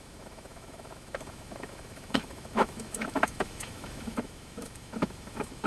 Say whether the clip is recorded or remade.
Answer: remade